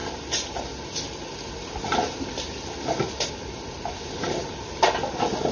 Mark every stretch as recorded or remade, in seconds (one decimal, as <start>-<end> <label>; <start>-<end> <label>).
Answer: 0.0-5.5 recorded

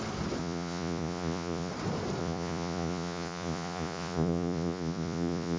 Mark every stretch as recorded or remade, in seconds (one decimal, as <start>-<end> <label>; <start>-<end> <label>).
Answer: 0.0-0.4 recorded; 0.4-1.7 remade; 1.7-2.2 recorded; 2.2-5.6 remade

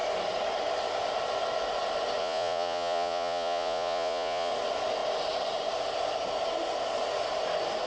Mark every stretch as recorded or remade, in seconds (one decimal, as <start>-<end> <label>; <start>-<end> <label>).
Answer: 0.0-2.2 recorded; 2.2-4.5 remade; 4.5-7.9 recorded

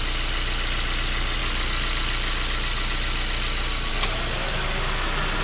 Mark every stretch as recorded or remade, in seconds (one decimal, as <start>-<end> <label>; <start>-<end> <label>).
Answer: 0.0-5.4 recorded

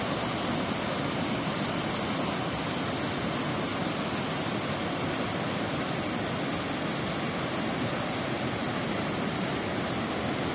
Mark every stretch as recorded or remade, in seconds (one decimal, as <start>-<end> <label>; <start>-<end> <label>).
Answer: 0.0-10.5 recorded

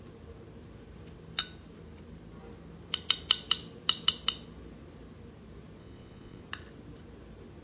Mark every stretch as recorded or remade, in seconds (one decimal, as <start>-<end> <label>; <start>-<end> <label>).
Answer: 0.0-5.8 recorded; 5.8-6.4 remade; 6.4-7.6 recorded

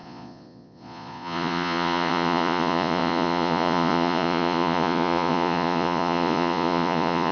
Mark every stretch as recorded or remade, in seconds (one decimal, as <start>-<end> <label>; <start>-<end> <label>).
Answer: 0.0-7.3 remade